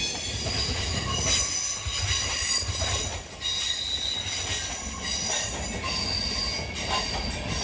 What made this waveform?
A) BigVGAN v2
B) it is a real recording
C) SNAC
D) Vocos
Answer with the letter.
B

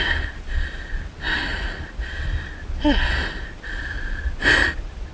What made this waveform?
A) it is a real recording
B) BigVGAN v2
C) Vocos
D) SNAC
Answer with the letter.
B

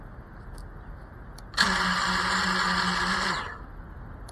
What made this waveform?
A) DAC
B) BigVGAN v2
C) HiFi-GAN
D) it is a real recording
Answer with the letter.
D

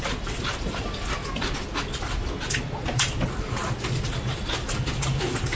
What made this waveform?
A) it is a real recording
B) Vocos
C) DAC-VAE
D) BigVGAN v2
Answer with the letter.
A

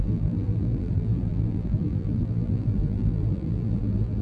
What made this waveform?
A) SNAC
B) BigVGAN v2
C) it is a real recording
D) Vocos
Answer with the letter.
B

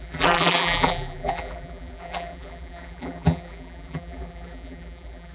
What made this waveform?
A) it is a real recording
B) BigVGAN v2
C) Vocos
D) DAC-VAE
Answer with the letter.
B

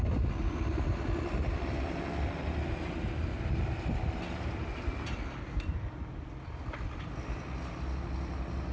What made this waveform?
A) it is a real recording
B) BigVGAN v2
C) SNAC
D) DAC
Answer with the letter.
A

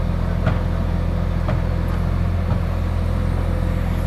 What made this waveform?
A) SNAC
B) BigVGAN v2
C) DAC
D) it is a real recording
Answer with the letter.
D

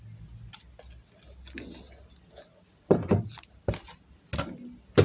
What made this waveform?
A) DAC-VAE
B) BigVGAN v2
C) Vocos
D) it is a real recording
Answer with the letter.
D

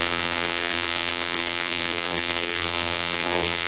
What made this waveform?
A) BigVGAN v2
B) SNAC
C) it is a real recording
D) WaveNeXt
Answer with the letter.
A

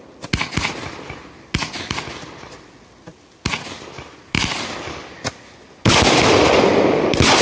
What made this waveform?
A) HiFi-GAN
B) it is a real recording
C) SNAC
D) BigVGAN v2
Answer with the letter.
B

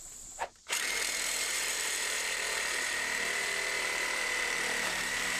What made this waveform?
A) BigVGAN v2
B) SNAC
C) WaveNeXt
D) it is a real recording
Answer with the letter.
A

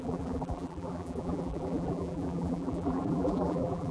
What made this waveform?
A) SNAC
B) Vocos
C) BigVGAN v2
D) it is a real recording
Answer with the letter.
C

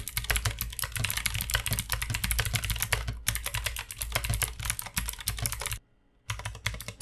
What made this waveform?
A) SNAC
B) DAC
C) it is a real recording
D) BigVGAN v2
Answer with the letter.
C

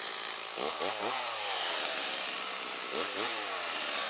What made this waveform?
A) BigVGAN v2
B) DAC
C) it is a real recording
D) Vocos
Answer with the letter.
A